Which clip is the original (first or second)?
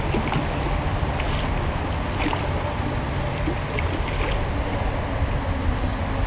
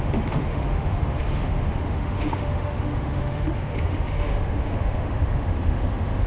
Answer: first